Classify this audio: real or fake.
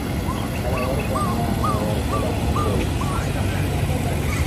real